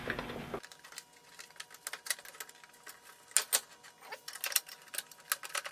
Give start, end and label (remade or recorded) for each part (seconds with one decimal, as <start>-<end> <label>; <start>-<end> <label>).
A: 0.0-5.7 recorded